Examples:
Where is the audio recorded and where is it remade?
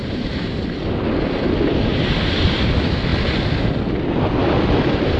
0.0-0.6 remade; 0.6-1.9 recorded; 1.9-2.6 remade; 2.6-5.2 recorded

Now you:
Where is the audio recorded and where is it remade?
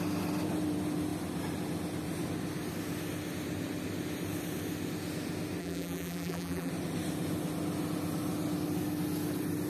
0.0-5.6 recorded; 5.6-6.7 remade; 6.7-9.7 recorded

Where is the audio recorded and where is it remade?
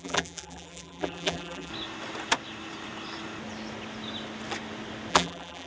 0.0-1.7 remade; 1.7-5.1 recorded; 5.1-5.7 remade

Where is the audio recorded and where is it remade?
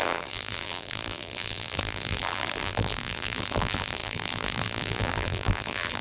0.0-6.0 remade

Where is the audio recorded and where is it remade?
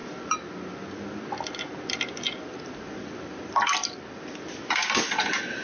0.0-3.8 recorded; 3.8-5.0 remade; 5.0-5.6 recorded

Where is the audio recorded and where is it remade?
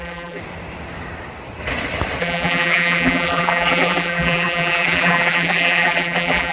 0.0-0.4 remade; 0.4-2.2 recorded; 2.2-6.5 remade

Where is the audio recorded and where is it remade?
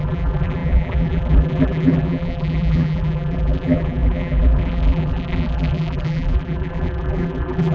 0.0-7.7 remade